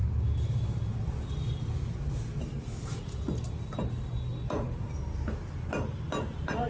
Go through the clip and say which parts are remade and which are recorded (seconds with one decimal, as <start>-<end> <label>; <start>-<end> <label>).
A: 0.0-6.7 recorded